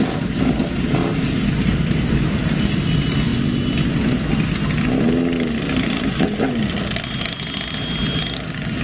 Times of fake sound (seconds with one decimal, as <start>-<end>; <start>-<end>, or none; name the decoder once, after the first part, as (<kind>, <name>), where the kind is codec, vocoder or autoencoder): 1.0-2.8 (vocoder, BigVGAN v2)